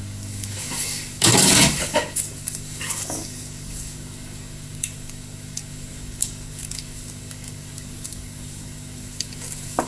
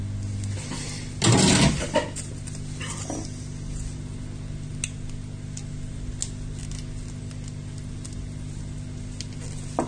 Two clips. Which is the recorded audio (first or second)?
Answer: second